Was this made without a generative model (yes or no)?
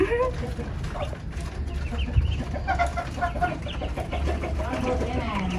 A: yes